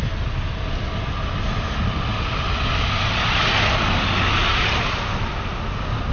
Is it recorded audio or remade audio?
recorded